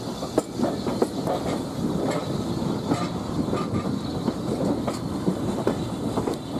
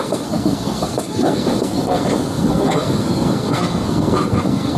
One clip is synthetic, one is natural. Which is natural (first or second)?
first